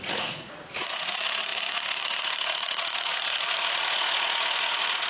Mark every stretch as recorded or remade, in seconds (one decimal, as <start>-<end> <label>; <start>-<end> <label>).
0.0-5.1 remade